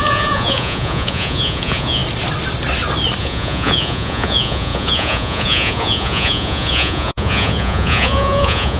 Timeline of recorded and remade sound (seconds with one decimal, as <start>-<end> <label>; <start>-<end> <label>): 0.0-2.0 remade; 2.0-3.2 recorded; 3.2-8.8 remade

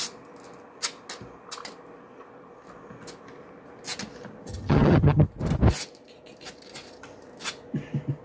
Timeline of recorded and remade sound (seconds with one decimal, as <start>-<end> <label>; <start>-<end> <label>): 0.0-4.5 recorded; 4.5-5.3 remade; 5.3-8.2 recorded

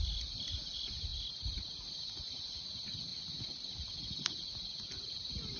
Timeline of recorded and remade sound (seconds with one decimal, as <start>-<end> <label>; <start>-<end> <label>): 0.0-5.6 recorded

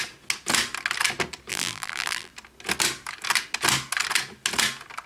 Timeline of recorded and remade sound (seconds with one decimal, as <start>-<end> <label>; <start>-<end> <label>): 0.0-1.5 recorded; 1.5-2.3 remade; 2.3-5.1 recorded